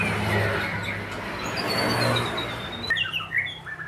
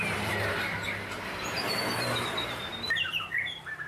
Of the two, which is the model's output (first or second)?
second